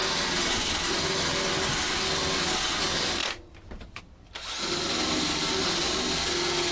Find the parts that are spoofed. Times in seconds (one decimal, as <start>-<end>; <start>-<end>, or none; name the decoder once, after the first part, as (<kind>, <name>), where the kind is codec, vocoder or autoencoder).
none